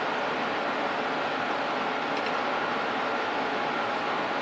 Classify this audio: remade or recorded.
recorded